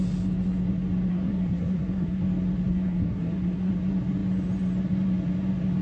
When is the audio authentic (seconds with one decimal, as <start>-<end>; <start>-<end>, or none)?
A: 0.0-1.1; 2.2-2.7; 3.7-5.8